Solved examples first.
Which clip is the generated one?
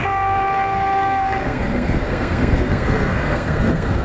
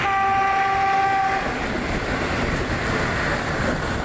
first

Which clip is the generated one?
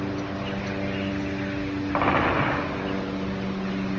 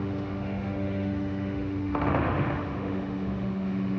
second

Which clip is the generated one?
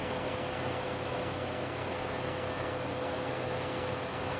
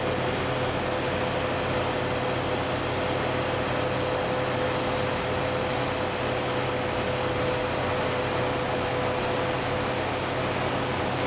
first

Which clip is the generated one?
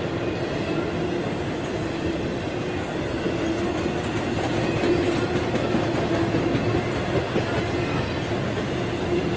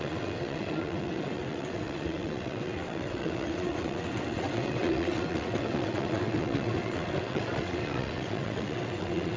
second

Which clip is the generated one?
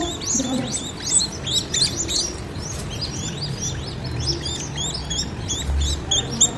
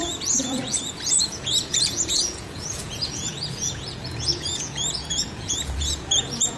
second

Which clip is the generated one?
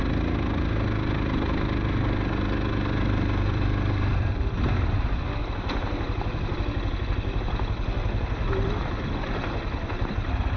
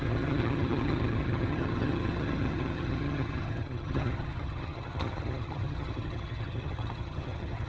second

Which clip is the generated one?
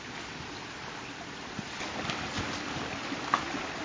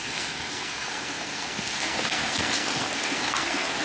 second